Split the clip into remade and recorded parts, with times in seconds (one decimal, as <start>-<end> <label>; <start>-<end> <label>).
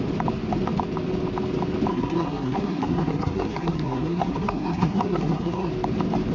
0.0-1.9 recorded; 1.9-5.7 remade; 5.7-6.3 recorded